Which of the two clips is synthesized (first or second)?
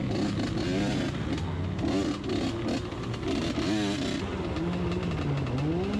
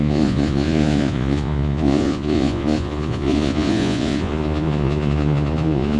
second